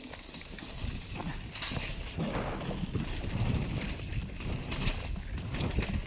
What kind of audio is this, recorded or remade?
recorded